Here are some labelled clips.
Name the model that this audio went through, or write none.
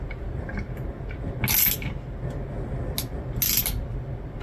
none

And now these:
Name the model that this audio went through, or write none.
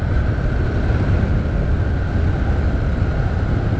none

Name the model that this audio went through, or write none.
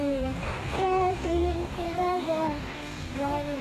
codec, DAC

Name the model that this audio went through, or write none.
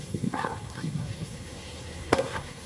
codec, SNAC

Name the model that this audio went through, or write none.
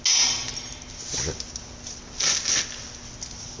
none